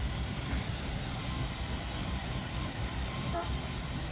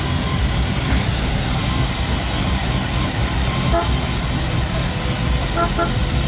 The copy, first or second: first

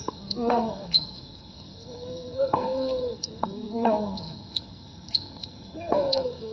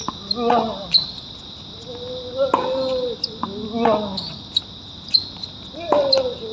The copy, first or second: first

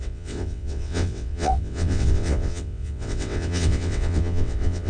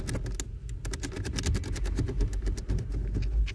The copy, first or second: first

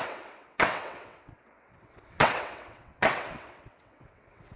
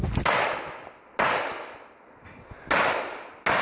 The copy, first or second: first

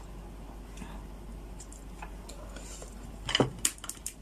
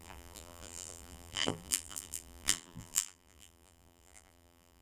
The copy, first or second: second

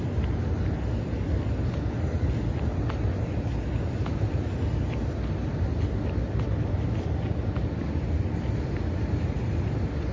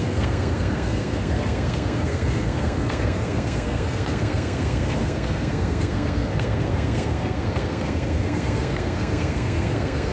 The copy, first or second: second